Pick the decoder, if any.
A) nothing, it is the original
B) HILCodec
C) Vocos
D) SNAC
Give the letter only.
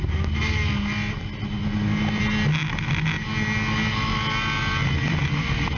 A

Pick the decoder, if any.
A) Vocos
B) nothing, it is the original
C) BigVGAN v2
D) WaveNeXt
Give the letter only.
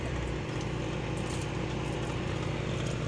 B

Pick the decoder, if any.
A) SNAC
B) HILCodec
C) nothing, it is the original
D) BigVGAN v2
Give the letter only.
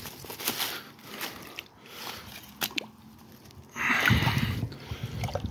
C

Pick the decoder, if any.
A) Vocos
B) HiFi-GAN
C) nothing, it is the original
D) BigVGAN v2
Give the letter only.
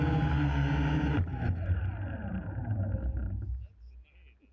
C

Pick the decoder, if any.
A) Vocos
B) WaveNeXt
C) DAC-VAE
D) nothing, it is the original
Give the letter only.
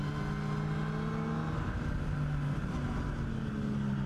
D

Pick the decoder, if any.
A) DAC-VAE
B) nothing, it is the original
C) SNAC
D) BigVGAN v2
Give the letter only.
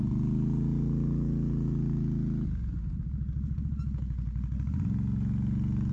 B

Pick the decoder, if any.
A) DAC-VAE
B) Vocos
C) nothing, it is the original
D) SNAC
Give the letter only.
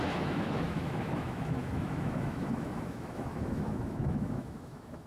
A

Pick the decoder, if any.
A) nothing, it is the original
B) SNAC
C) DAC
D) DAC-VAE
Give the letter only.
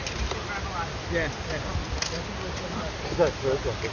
A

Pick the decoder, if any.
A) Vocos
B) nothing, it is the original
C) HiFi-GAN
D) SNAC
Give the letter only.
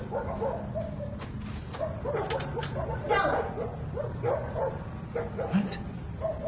B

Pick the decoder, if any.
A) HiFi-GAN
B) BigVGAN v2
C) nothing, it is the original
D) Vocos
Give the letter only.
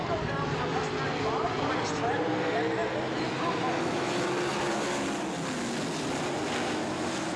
C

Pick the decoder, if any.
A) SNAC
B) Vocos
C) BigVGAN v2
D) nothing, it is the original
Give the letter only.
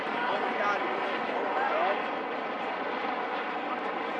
D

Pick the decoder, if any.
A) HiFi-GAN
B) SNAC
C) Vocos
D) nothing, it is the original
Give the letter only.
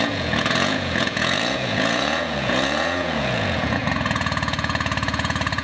C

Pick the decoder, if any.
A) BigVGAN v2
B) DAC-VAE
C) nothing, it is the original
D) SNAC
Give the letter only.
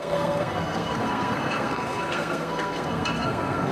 D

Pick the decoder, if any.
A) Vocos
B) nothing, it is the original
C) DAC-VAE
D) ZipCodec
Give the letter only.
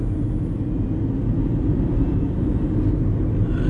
B